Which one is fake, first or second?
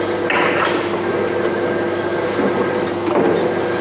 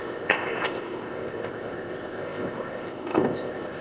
second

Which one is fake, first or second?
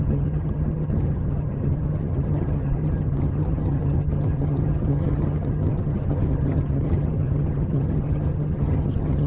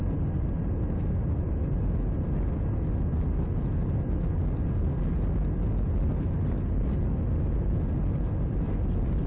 first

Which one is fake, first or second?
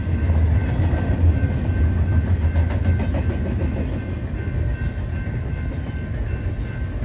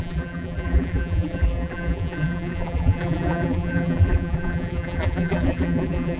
second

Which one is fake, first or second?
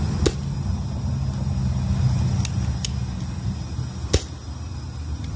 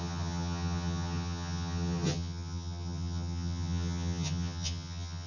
second